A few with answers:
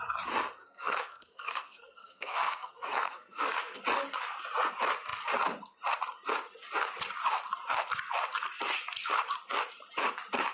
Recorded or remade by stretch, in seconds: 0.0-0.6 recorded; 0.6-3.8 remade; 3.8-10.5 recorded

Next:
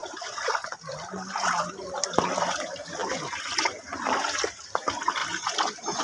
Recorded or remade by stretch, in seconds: 0.0-6.0 recorded

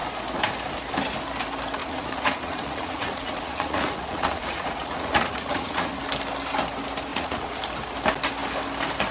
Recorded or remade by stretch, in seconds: 0.0-1.8 recorded; 1.8-5.9 remade; 5.9-7.1 recorded; 7.1-7.6 remade; 7.6-9.1 recorded